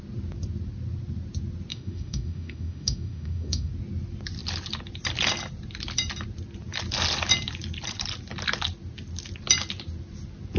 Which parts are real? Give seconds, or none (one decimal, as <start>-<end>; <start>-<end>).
0.0-1.7; 3.7-10.6